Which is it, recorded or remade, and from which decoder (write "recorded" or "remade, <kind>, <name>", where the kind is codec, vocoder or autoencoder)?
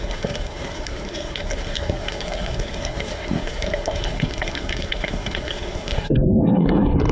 remade, codec, SNAC